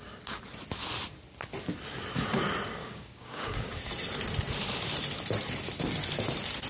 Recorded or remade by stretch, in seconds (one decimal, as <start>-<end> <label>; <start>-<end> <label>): 0.0-2.8 recorded; 2.8-3.8 remade; 3.8-6.7 recorded